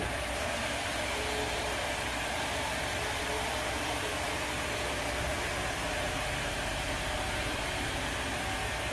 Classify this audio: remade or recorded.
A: remade